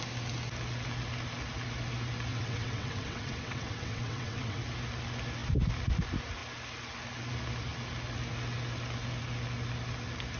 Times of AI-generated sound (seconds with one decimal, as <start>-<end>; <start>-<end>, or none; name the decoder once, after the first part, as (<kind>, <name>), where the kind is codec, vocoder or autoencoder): 2.3-4.6 (vocoder, WaveNeXt)